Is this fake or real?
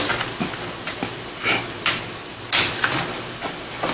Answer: real